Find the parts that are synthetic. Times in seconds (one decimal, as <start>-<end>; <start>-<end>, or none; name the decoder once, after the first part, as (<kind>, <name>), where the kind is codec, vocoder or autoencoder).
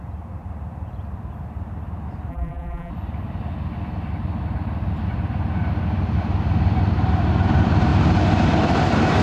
2.3-2.9 (vocoder, BigVGAN v2)